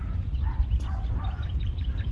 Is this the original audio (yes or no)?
no